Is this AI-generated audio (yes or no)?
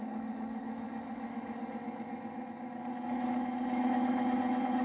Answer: yes